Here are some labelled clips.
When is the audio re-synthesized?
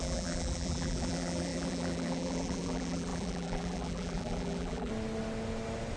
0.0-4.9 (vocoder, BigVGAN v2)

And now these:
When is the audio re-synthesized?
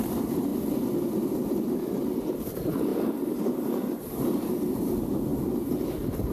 none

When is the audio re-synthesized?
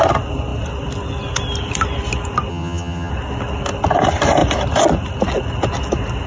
2.5-3.1 (vocoder, HiFi-GAN)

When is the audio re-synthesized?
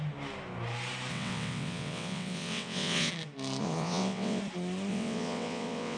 1.1-3.1 (vocoder, WaveNeXt); 3.6-4.4; 4.9-6.0